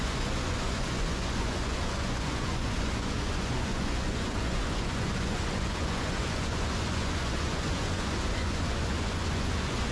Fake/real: fake